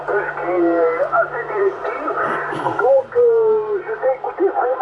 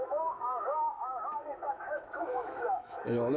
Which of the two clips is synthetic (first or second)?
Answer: second